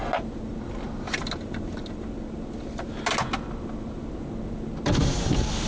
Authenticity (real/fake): real